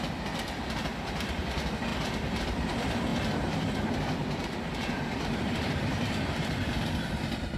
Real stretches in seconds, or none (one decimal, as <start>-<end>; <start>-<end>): none